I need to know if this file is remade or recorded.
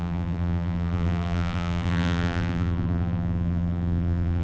remade